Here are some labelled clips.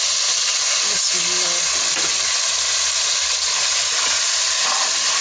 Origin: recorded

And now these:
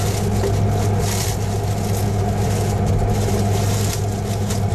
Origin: recorded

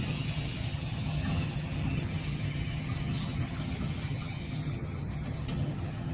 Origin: remade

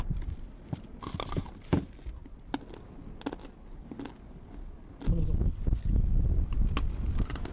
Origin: recorded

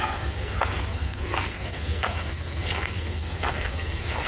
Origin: remade